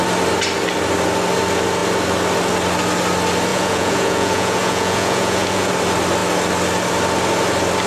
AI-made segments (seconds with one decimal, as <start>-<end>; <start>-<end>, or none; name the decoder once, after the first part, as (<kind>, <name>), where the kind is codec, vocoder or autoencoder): 3.5-5.7 (vocoder, Vocos)

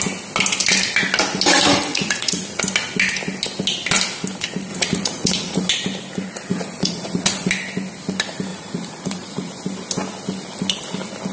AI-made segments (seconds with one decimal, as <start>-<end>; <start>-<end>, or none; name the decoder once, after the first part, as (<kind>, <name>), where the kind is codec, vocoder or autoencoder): 1.9-2.6 (vocoder, Vocos); 4.7-5.7; 6.5-7.5; 8.5-9.5